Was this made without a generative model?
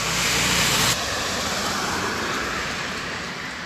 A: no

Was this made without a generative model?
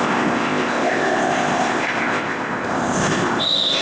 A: no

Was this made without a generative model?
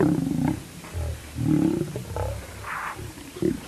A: yes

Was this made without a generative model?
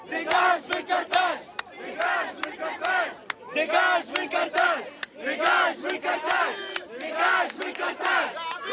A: yes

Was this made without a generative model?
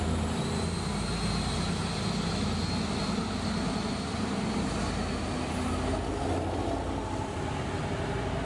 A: yes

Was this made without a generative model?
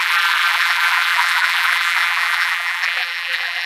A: no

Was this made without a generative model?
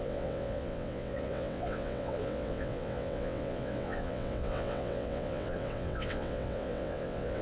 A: no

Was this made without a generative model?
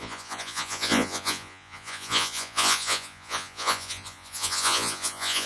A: no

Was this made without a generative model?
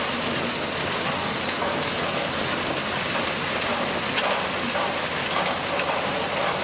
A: yes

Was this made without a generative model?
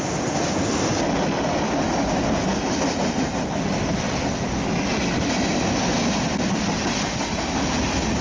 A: yes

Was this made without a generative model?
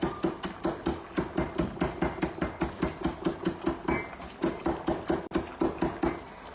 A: yes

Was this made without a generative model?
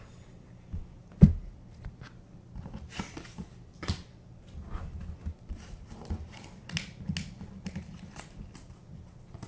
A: yes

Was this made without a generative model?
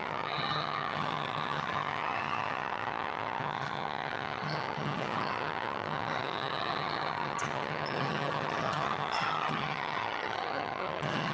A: no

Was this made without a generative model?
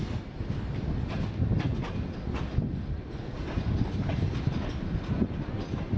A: yes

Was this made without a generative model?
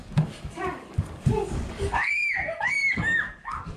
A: no